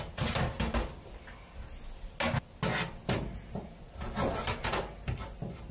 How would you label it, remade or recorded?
recorded